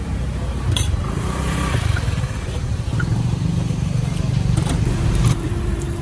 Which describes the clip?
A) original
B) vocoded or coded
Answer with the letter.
B